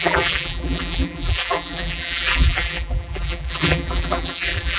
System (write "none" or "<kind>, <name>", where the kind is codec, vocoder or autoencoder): vocoder, BigVGAN v2